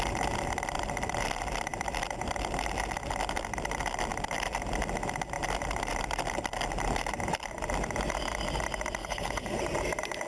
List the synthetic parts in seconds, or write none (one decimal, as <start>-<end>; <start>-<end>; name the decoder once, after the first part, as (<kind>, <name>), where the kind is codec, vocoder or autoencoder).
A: 9.0-9.6 (codec, HILCodec)